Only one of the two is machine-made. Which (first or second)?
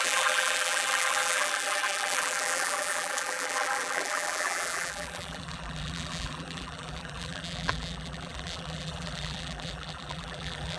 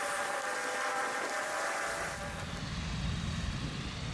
first